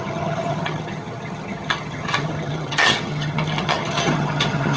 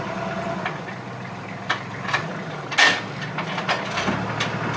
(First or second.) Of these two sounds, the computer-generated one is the first